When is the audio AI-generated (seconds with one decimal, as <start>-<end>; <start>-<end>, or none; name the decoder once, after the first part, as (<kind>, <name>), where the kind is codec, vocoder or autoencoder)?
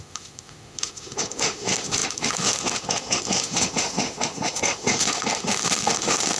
0.0-6.4 (autoencoder, DAC-VAE)